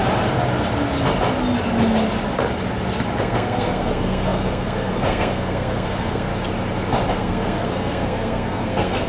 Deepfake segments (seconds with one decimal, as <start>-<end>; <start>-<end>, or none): 3.2-6.3; 7.1-9.1